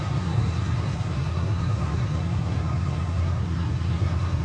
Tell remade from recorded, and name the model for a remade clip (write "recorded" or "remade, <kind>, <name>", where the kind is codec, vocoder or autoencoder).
remade, codec, SNAC